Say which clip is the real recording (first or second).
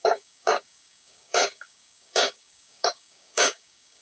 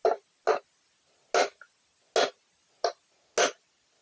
second